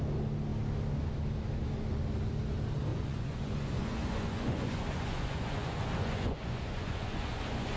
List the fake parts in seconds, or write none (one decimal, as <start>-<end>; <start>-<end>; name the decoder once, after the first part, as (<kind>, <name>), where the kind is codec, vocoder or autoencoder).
2.9-7.8 (vocoder, Vocos)